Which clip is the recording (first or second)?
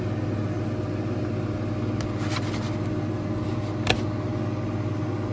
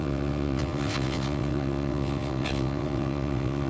first